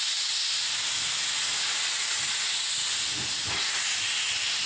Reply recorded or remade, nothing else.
recorded